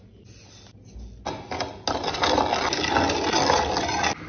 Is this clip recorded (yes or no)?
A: yes